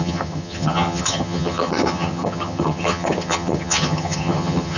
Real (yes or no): no